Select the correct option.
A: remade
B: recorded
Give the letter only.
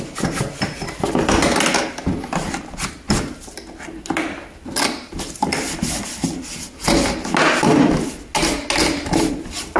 B